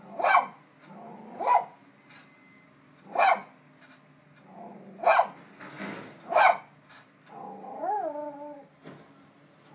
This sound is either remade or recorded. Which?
recorded